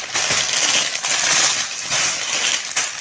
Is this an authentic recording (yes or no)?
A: yes